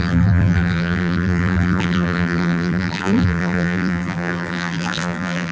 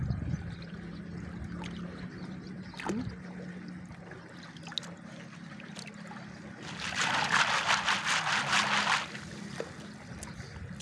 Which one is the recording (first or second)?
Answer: second